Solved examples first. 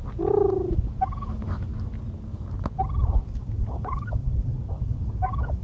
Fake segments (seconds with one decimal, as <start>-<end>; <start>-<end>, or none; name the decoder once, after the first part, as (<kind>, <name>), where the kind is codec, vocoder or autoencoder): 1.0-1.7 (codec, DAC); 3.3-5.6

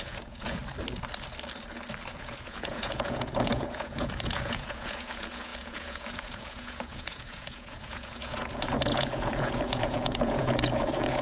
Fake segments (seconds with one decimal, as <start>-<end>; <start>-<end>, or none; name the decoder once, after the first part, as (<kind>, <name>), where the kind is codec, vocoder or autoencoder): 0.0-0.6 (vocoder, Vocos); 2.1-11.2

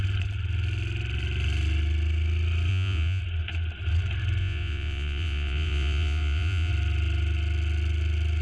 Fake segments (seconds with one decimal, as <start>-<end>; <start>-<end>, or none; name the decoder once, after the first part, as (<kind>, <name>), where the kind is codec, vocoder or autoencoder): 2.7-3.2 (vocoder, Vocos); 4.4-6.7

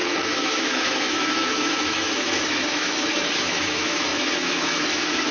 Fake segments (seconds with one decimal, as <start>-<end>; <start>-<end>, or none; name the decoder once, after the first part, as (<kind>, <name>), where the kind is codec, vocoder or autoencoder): 0.0-5.3 (autoencoder, DAC-VAE)